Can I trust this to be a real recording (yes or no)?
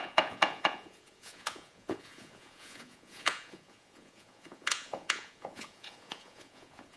no